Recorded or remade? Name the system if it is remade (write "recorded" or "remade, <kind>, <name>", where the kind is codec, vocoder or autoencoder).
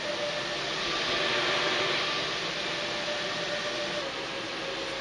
recorded